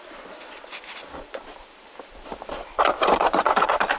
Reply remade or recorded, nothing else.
remade